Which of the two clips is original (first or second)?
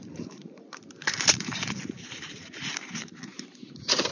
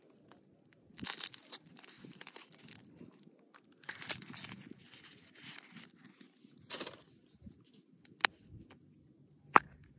second